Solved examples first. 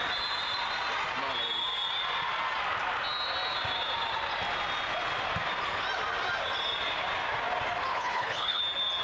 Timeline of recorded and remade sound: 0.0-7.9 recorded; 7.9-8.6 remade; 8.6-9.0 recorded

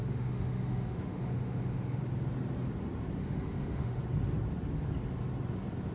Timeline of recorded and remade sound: 0.0-2.0 remade; 2.0-3.2 recorded; 3.2-4.0 remade; 4.0-5.9 recorded

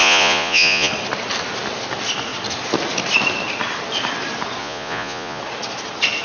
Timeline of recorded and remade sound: 0.0-0.9 remade; 0.9-4.6 recorded; 4.6-5.4 remade; 5.4-6.2 recorded

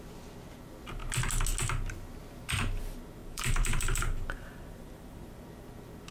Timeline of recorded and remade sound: 0.0-3.2 recorded; 3.2-5.4 remade; 5.4-6.1 recorded

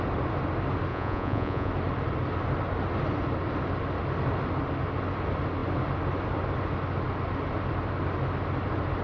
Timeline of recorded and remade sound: 0.0-0.9 recorded; 0.9-1.7 remade; 1.7-9.0 recorded

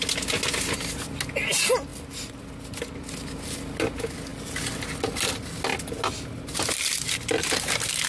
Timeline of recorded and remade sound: 0.0-8.1 recorded